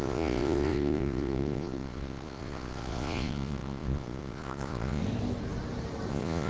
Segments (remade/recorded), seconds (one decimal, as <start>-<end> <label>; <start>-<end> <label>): 0.0-5.0 remade; 5.0-6.1 recorded; 6.1-6.5 remade